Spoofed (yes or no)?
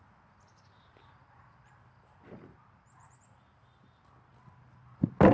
no